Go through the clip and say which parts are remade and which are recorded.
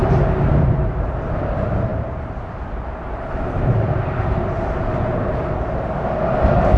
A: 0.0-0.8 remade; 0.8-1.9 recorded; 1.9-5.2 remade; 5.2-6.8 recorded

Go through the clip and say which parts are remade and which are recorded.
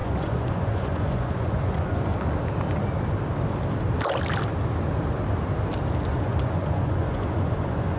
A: 0.0-2.1 remade; 2.1-6.1 recorded; 6.1-8.0 remade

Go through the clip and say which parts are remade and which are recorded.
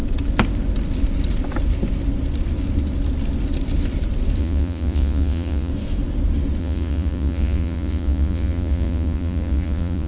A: 0.0-4.4 recorded; 4.4-5.7 remade; 5.7-6.6 recorded; 6.6-10.1 remade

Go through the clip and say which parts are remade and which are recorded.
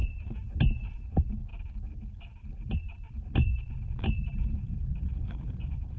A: 0.0-6.0 recorded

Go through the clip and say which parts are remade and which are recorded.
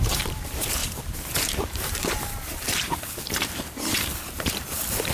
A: 0.0-5.1 remade